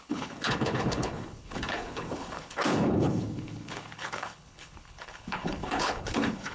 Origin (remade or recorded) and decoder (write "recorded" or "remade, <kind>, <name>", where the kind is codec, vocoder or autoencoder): remade, codec, HILCodec